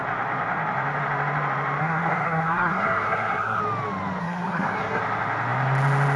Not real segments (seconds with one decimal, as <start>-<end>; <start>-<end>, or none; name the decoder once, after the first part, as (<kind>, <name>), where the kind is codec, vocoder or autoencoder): 1.8-3.6 (codec, SNAC); 4.2-5.0